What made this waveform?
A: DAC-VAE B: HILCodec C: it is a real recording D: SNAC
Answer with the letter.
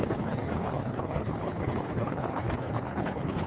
B